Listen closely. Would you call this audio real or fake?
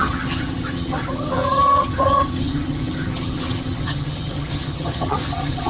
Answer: fake